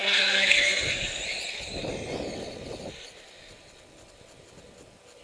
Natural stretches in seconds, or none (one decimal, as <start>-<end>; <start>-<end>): 1.2-5.2